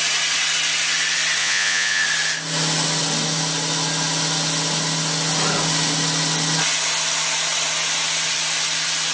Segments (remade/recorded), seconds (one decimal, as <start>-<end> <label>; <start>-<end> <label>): 0.0-1.4 recorded; 1.4-2.0 remade; 2.0-9.1 recorded